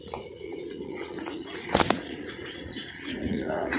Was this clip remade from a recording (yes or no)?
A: yes